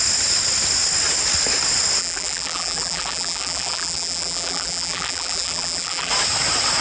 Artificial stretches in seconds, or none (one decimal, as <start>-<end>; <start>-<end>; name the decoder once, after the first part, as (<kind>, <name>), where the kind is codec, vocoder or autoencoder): 2.0-6.1 (vocoder, BigVGAN v2)